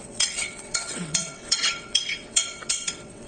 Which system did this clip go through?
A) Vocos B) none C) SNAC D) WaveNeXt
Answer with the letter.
D